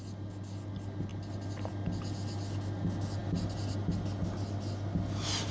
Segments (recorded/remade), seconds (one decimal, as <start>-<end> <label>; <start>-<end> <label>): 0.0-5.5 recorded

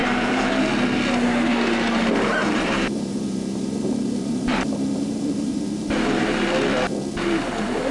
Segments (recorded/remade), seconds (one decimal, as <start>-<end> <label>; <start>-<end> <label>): 0.0-0.5 remade; 0.5-2.4 recorded; 2.4-6.4 remade; 6.4-7.9 recorded

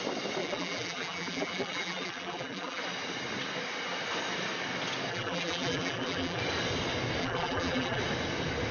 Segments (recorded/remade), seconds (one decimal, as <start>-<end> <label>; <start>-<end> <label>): 0.0-0.4 recorded; 0.4-2.8 remade; 2.8-5.1 recorded; 5.1-6.4 remade; 6.4-7.2 recorded; 7.2-8.0 remade; 8.0-8.7 recorded